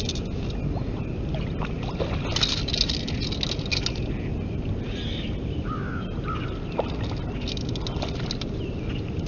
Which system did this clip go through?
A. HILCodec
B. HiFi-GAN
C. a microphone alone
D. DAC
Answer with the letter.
C